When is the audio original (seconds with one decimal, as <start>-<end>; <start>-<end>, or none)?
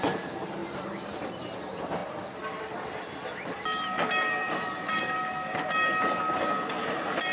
0.0-7.3